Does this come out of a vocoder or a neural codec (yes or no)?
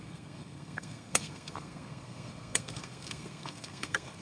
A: yes